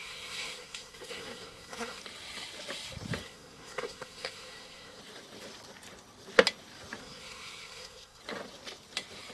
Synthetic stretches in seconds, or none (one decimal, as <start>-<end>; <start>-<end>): 0.0-2.0; 3.2-5.0; 7.0-8.2